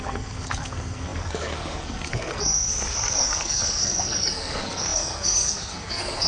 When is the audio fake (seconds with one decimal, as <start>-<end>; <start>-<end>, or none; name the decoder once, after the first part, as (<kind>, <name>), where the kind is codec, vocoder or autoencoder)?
0.0-6.3 (codec, SNAC)